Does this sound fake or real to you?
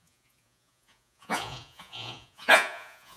fake